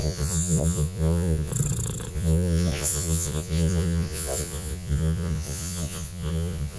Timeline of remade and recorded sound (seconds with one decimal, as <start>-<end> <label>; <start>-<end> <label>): 0.0-1.5 remade; 1.5-2.1 recorded; 2.1-6.8 remade